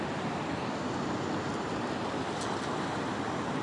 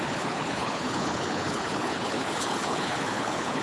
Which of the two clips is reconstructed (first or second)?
second